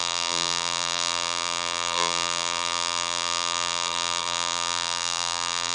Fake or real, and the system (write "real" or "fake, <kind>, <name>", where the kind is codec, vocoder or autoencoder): fake, vocoder, BigVGAN v2